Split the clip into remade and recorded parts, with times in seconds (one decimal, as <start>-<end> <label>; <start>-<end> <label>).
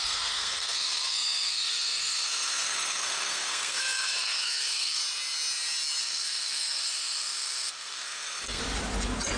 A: 0.0-5.0 remade; 5.0-6.0 recorded; 6.0-8.6 remade; 8.6-9.4 recorded